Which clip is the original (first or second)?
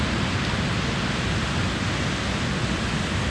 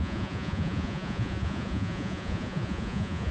first